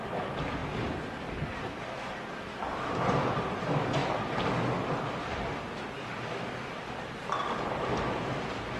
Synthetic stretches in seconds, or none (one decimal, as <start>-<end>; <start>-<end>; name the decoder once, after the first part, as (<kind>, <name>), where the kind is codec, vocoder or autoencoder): none

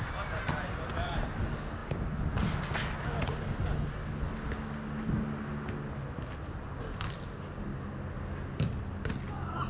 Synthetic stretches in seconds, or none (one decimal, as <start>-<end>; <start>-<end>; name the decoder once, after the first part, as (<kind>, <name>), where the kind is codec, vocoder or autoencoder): none

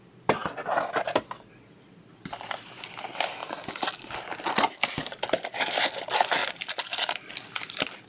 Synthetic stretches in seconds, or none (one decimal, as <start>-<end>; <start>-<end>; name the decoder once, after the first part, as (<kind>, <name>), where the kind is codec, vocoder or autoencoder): none